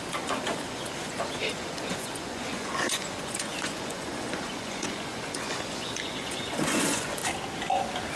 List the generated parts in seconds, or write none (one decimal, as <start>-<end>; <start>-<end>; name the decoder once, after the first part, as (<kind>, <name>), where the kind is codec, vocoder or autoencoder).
0.0-7.2 (vocoder, Vocos)